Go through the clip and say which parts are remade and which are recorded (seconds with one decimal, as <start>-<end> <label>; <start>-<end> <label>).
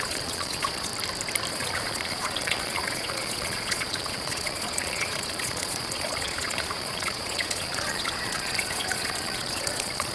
0.0-0.9 remade; 0.9-1.5 recorded; 1.5-10.1 remade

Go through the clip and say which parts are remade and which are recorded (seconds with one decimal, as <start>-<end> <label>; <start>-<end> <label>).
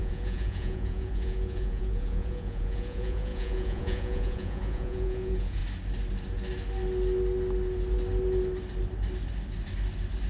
0.0-5.6 remade; 5.6-10.3 recorded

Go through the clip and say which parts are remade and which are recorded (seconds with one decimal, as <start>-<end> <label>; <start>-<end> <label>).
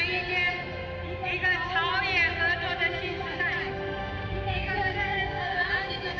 0.0-4.0 recorded; 4.0-6.2 remade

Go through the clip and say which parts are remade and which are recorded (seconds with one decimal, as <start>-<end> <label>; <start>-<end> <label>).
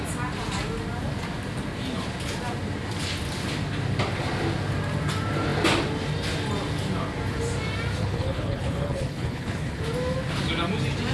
0.0-8.0 recorded; 8.0-9.8 remade; 9.8-11.1 recorded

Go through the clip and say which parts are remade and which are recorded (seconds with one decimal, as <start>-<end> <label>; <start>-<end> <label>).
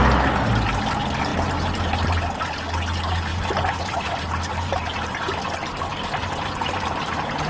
0.0-3.3 recorded; 3.3-5.4 remade; 5.4-5.9 recorded; 5.9-7.5 remade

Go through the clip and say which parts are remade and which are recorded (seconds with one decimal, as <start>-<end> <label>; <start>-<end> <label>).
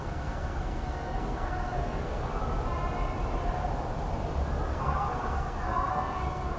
0.0-2.4 remade; 2.4-4.7 recorded; 4.7-6.6 remade